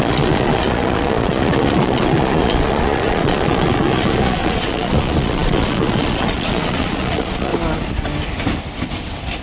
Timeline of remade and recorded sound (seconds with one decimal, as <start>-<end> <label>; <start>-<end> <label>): 0.0-7.5 remade; 7.5-9.4 recorded